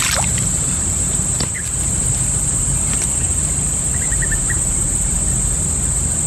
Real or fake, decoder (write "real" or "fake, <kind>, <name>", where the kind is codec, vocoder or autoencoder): fake, vocoder, BigVGAN v2